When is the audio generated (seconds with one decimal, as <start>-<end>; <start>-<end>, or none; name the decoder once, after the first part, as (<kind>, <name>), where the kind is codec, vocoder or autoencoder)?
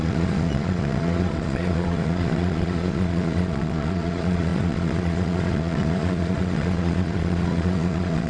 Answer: 0.0-8.3 (vocoder, Vocos)